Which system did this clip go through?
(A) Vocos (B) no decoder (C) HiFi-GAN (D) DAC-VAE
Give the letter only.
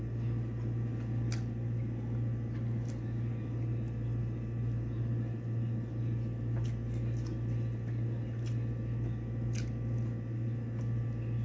B